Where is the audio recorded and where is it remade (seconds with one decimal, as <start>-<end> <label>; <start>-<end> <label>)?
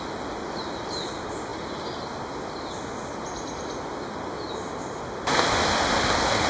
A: 0.0-6.5 recorded